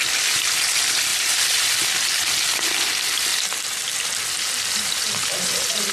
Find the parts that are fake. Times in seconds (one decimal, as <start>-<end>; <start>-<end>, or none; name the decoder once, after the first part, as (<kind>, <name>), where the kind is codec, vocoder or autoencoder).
1.1-1.7 (vocoder, BigVGAN v2)